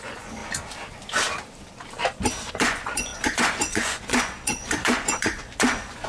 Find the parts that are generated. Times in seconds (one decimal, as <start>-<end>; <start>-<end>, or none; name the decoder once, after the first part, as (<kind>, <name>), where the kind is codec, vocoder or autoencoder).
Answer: 0.0-0.4 (vocoder, Vocos); 2.5-6.1